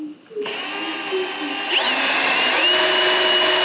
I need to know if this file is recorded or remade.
recorded